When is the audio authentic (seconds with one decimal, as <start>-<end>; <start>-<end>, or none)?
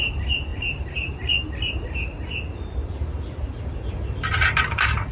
none